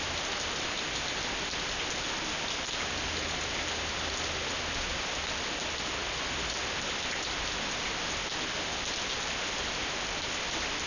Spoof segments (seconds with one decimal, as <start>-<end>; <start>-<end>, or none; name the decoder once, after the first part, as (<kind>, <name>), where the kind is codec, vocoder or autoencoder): none